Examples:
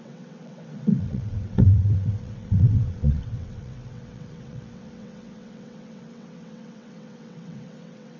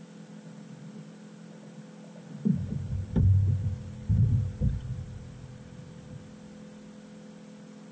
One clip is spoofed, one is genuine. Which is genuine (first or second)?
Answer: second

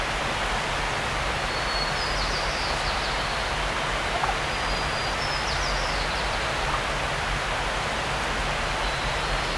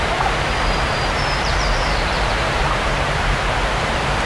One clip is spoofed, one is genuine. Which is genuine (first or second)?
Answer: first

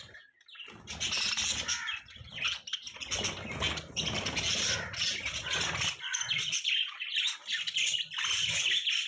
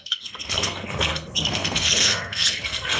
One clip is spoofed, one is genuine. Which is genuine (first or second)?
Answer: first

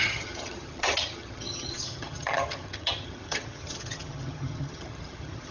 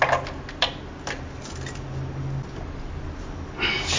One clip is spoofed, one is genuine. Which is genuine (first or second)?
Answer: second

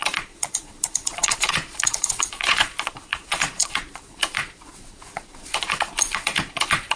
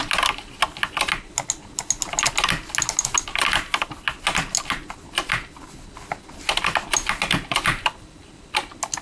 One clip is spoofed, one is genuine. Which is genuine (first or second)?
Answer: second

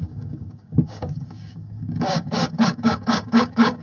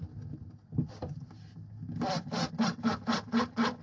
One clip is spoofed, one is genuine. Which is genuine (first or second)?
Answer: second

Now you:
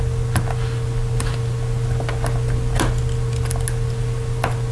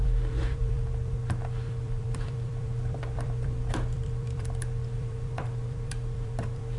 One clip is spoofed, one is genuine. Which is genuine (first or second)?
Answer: first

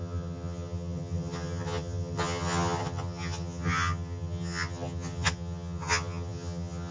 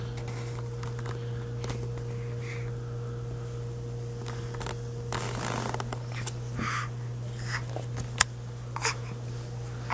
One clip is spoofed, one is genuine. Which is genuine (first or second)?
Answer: second